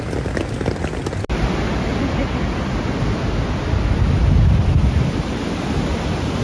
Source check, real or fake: real